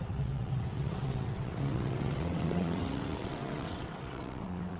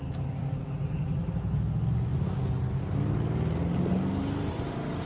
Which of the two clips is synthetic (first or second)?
first